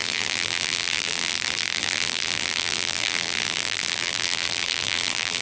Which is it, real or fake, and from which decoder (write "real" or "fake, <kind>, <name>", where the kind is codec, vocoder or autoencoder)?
fake, vocoder, BigVGAN v2